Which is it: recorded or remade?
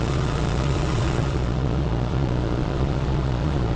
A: remade